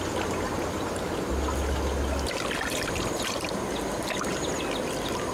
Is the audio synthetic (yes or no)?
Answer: no